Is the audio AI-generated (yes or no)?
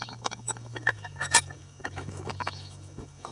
yes